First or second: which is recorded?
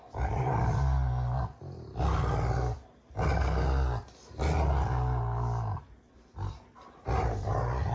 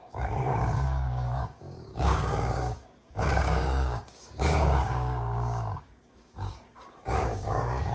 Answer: first